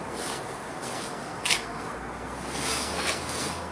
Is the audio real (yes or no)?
no